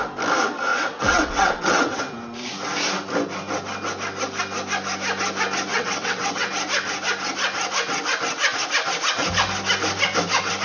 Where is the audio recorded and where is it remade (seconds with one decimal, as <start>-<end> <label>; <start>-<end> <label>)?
0.0-0.7 recorded; 0.7-2.0 remade; 2.0-5.7 recorded; 5.7-6.5 remade; 6.5-10.6 recorded